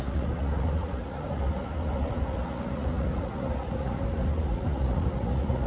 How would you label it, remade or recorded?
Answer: remade